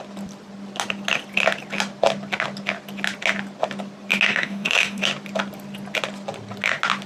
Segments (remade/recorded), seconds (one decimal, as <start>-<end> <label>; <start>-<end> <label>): 0.0-4.3 recorded; 4.3-5.0 remade; 5.0-7.1 recorded